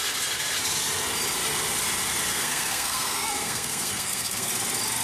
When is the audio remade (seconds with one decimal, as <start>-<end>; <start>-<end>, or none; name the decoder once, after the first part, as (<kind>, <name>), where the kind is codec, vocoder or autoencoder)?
2.3-4.5 (codec, SNAC)